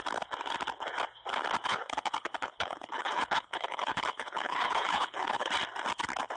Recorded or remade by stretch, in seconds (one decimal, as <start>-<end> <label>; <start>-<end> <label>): 0.0-1.7 recorded; 1.7-5.5 remade; 5.5-6.4 recorded